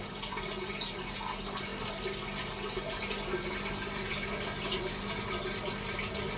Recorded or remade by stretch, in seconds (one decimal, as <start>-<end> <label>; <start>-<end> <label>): 0.0-6.4 recorded